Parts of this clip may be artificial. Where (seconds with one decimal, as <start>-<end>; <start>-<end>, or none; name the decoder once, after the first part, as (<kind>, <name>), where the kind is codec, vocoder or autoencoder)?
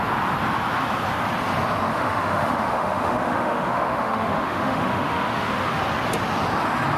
1.9-5.8 (autoencoder, DAC-VAE)